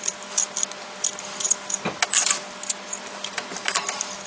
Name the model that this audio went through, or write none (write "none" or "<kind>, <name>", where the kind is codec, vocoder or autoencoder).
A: none